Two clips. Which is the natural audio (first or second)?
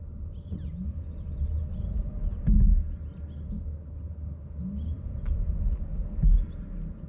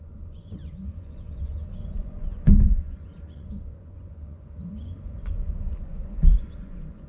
first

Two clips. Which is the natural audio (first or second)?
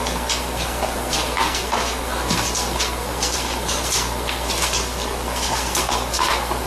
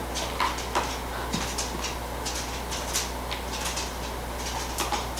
second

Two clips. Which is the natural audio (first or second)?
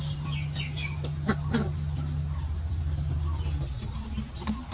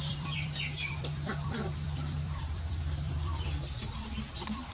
first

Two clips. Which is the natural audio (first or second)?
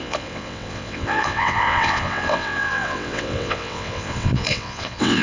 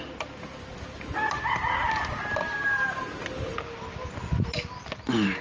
second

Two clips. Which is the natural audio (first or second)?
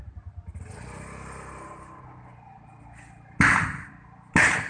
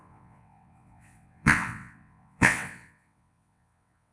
first